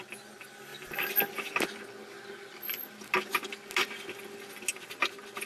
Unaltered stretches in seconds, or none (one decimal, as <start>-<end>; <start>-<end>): 0.0-5.5